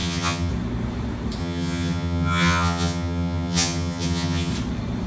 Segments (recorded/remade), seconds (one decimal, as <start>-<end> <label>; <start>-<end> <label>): 0.0-0.5 remade; 0.5-1.4 recorded; 1.4-4.5 remade; 4.5-5.1 recorded